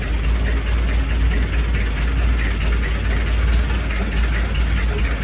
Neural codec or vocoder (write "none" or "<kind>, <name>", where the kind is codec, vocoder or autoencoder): none